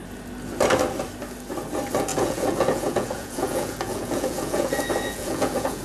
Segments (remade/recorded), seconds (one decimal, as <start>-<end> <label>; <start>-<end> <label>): 0.0-2.1 recorded; 2.1-5.8 remade